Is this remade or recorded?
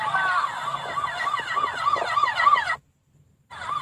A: recorded